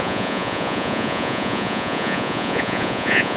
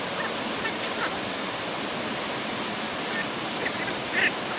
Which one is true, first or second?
second